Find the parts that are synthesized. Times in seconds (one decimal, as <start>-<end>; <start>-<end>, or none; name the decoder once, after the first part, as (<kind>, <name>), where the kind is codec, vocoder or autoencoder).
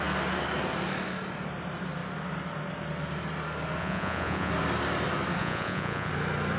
3.8-4.5 (vocoder, Vocos); 5.4-6.1